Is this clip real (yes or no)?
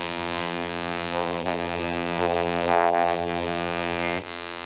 no